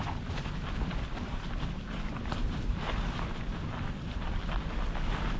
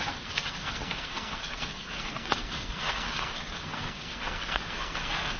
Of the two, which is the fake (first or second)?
second